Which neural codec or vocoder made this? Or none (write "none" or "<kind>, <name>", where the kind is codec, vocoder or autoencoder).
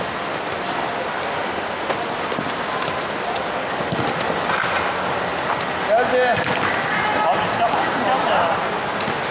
none